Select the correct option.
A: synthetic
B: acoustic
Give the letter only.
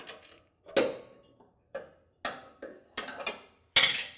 B